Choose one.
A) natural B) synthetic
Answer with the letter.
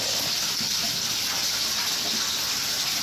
A